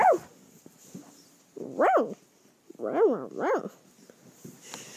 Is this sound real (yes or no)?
yes